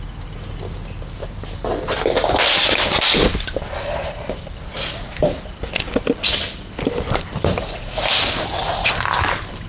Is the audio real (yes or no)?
yes